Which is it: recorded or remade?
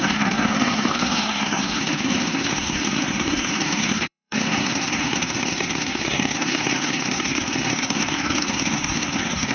remade